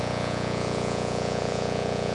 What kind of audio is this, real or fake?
fake